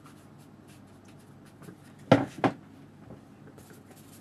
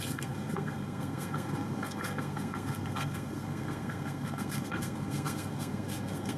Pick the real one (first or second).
first